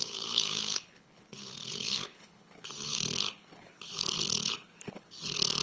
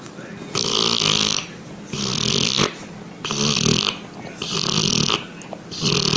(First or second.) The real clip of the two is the second